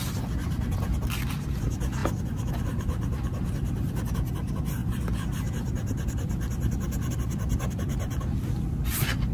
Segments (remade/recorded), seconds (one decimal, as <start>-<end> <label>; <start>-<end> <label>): 0.0-9.3 recorded